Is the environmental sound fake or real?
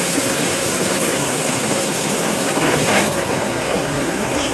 fake